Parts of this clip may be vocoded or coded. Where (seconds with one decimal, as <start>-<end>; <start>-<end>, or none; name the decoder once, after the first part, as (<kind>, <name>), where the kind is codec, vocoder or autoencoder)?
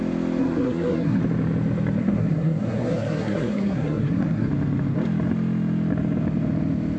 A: 0.4-1.2 (codec, SNAC); 2.0-4.5